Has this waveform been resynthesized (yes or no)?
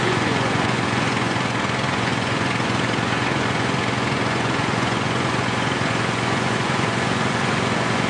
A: yes